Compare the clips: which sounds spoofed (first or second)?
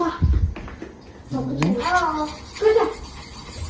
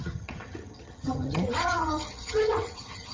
second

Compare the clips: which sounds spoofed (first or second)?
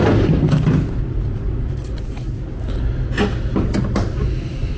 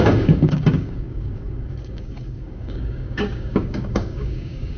second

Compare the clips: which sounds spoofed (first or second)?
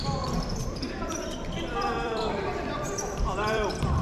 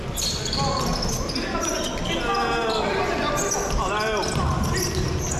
first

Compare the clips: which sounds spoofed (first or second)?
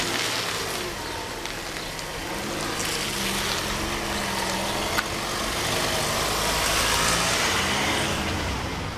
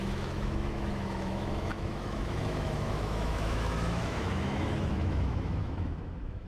second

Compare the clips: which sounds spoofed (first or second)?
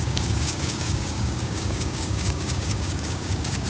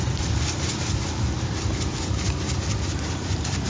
first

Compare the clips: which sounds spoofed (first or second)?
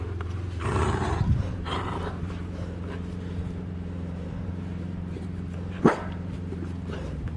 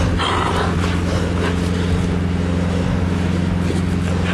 first